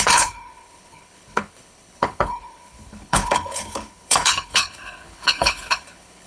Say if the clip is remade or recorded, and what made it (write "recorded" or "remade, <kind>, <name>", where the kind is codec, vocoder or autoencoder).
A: remade, codec, HILCodec